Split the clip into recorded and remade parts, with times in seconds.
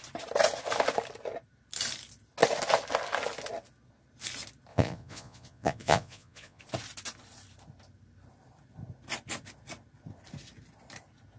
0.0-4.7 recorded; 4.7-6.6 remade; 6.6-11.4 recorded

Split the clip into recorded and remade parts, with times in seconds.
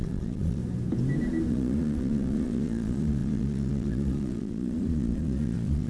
0.0-0.6 remade; 0.6-1.5 recorded; 1.5-5.9 remade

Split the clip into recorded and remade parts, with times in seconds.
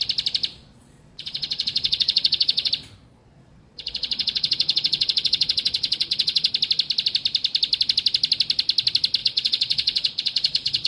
0.0-0.6 recorded; 0.6-2.7 remade; 2.7-3.2 recorded; 3.2-6.5 remade; 6.5-9.2 recorded; 9.2-10.9 remade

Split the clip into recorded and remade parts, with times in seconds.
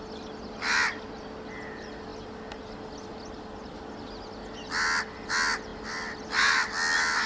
0.0-7.3 recorded